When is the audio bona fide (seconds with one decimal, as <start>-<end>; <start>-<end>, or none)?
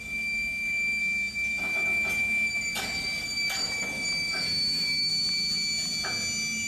1.0-1.6; 5.1-6.7